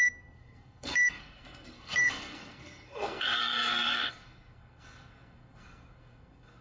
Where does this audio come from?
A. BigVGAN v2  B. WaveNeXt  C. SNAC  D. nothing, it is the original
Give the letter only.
C